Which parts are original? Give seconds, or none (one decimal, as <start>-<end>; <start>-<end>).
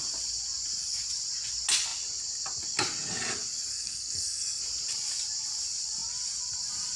0.0-3.7; 4.6-7.0